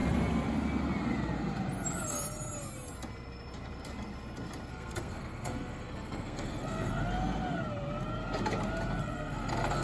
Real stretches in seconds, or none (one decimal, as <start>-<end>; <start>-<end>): 0.0-4.7; 7.0-9.0